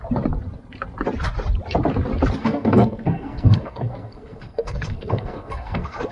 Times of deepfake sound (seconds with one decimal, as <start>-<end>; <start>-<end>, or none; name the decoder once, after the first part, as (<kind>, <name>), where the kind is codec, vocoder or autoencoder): 2.4-6.1 (codec, SNAC)